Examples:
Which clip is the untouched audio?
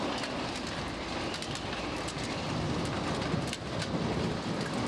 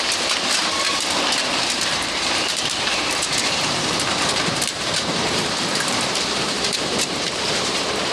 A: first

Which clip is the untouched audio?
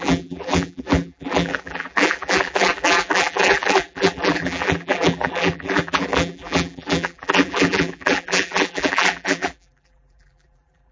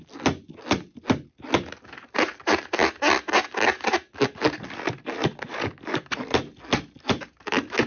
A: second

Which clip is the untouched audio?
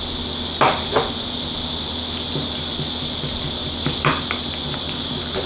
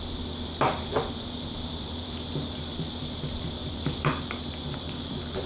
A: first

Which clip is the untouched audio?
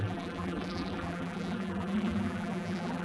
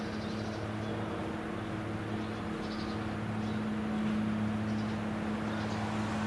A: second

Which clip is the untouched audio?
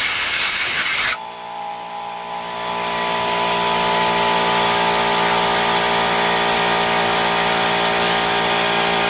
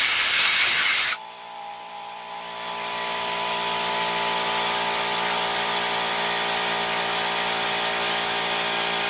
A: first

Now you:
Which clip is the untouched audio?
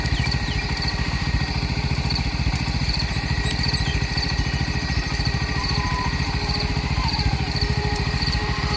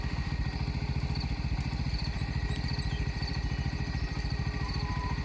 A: second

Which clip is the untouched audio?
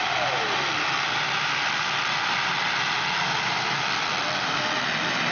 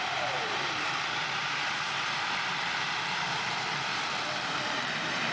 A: first